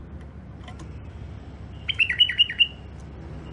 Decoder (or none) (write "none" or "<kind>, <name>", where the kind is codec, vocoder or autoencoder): none